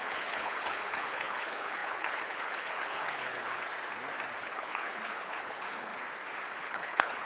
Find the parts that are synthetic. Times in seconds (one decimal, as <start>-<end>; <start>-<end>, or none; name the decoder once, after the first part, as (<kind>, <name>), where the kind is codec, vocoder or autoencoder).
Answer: 0.0-3.7 (codec, HILCodec); 4.4-5.9; 6.6-7.3